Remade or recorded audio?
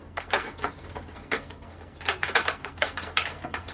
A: remade